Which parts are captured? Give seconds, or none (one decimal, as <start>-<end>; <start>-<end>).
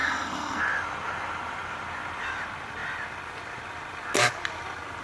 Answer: 0.6-5.0